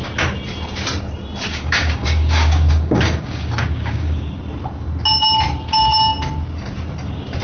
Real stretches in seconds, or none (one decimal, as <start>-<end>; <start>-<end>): 0.0-1.5; 4.4-7.4